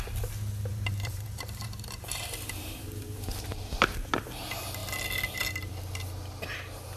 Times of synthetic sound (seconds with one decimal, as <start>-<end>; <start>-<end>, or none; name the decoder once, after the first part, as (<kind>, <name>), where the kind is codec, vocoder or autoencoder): 0.7-3.8 (vocoder, BigVGAN v2)